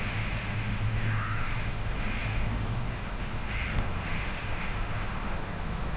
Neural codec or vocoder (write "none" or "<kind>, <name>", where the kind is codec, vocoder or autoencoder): autoencoder, DAC-VAE